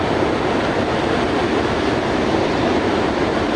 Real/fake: real